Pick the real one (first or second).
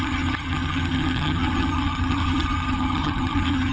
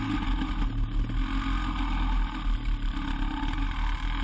second